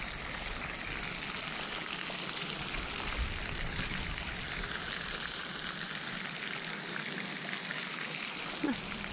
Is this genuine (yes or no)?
yes